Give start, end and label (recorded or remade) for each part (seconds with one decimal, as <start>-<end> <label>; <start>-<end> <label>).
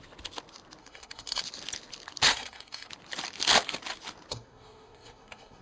0.0-0.8 recorded; 0.8-1.4 remade; 1.4-2.3 recorded; 2.3-2.9 remade; 2.9-4.3 recorded; 4.3-5.6 remade